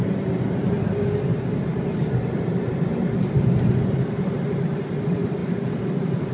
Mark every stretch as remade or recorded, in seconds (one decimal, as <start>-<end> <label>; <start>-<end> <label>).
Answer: 0.0-6.3 recorded